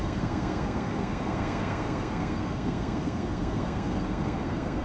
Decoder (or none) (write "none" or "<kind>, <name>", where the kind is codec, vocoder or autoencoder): codec, SNAC